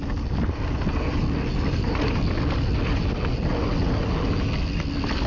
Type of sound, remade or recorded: recorded